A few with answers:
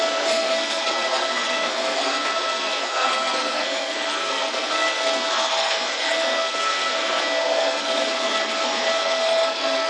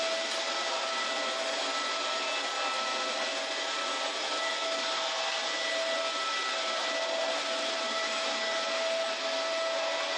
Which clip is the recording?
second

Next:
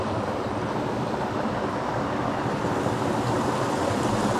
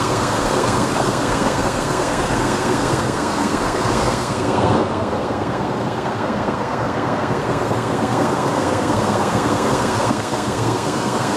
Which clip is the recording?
first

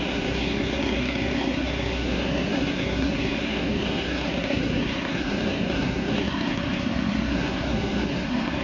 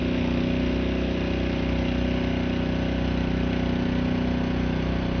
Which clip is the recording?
second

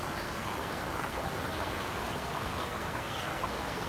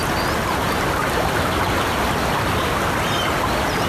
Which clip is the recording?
second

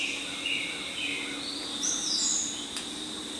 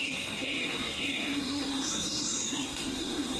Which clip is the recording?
first